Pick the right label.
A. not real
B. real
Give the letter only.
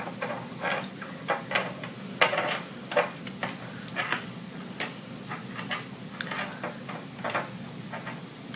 B